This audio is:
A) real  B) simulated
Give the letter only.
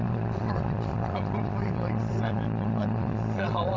B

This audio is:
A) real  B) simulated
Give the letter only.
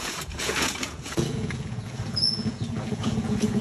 B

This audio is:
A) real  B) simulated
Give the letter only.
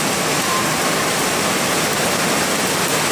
A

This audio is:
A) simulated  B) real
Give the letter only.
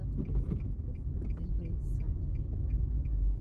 B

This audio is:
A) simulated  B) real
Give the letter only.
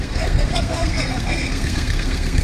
A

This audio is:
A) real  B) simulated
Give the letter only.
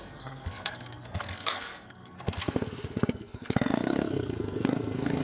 B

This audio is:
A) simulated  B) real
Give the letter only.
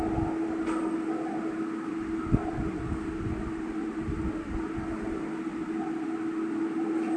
B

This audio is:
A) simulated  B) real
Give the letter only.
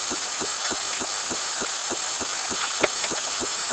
B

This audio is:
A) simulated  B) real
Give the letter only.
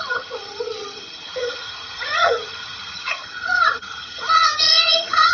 A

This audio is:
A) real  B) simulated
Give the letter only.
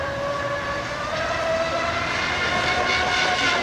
A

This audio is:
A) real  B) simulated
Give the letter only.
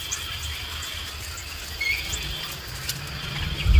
A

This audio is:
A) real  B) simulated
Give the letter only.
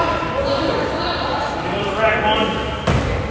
A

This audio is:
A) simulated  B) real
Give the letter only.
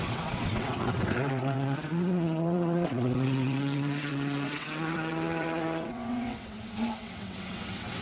A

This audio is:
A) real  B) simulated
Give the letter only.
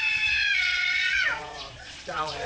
B